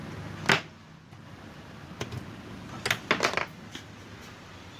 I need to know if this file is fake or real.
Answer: real